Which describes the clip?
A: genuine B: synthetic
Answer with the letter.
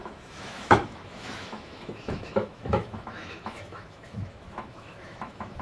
B